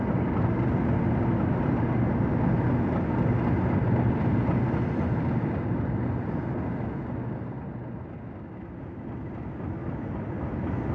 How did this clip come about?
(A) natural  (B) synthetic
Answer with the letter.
A